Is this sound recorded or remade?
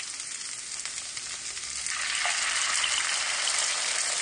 recorded